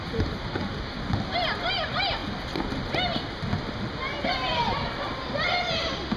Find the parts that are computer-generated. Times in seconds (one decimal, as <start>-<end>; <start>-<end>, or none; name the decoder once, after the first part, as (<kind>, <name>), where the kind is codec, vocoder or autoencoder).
none